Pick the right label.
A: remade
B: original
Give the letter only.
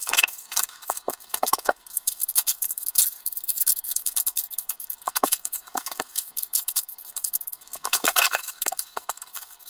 A